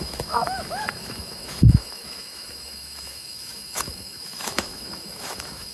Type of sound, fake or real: fake